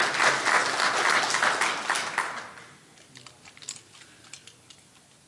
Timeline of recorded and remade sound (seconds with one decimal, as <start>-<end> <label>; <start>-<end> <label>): 0.0-5.3 recorded